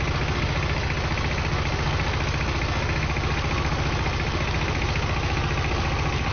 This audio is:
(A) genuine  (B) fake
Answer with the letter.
A